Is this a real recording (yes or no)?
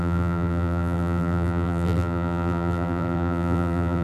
no